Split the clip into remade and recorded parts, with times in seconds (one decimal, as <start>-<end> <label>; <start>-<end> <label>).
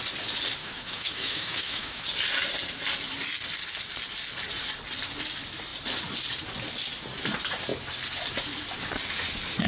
0.0-0.6 recorded; 0.6-2.0 remade; 2.0-9.7 recorded